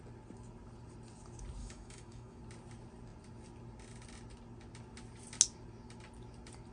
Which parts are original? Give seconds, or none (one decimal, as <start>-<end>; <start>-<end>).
0.0-1.6; 2.4-6.7